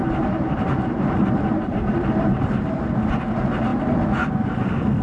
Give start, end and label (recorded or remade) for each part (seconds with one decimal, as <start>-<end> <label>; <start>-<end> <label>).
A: 0.0-3.0 remade; 3.0-5.0 recorded